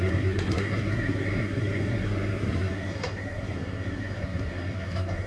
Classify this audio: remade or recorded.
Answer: remade